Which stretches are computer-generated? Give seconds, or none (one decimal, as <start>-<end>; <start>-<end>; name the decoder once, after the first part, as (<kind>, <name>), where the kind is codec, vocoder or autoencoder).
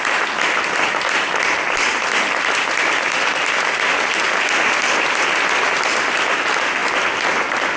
none